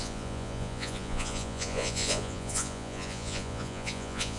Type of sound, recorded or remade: remade